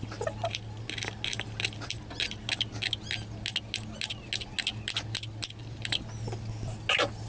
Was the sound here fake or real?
real